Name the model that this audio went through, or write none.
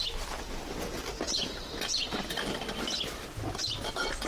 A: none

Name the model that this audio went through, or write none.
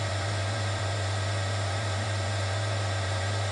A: vocoder, BigVGAN v2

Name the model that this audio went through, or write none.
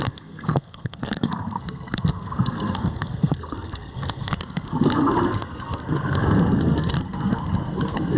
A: codec, SNAC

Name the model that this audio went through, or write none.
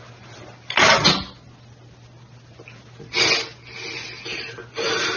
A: none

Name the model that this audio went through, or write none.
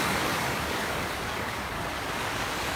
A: codec, DAC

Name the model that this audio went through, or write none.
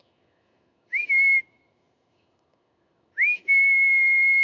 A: autoencoder, DAC-VAE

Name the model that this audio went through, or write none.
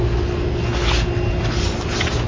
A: none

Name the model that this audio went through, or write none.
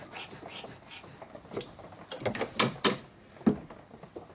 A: none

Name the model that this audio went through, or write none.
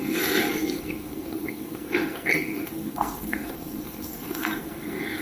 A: codec, SNAC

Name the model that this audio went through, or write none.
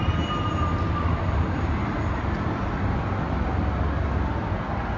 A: none